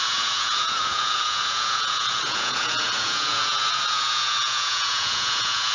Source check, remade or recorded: remade